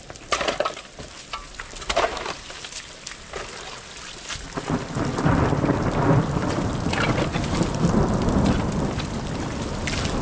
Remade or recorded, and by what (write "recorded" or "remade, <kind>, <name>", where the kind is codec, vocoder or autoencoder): recorded